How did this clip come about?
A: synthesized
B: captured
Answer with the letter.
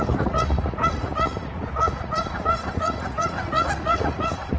A